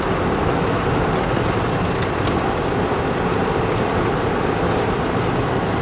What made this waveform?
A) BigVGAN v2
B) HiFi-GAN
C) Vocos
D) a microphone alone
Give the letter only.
D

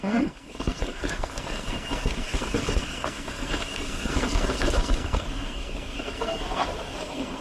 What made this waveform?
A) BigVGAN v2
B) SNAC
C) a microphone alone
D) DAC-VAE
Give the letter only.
B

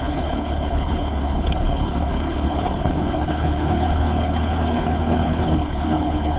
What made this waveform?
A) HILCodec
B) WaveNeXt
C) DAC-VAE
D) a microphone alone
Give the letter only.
A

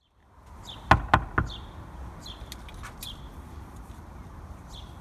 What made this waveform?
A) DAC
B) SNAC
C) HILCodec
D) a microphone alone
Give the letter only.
D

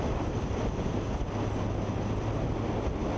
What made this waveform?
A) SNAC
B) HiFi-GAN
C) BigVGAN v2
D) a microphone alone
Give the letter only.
D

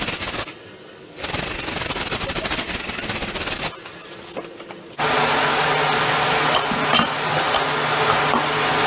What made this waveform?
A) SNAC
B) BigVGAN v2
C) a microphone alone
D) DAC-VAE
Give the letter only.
C